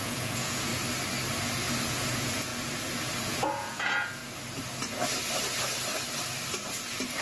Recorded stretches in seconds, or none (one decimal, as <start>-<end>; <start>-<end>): 0.7-1.9; 2.5-3.2; 4.2-7.2